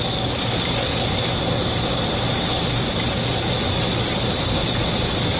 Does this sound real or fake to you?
real